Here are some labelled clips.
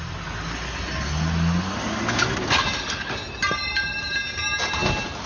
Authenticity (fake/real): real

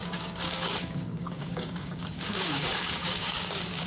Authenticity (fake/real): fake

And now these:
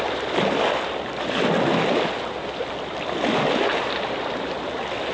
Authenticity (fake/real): real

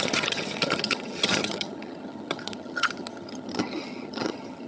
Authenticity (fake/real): fake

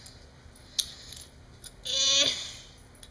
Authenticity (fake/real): real